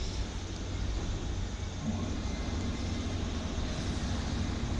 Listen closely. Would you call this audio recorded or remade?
recorded